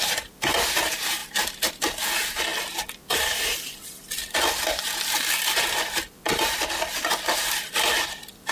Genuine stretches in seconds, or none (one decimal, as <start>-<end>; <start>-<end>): 0.0-8.5

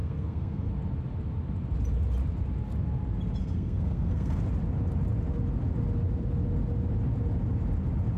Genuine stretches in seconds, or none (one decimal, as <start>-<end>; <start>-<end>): 0.7-3.4; 4.4-8.2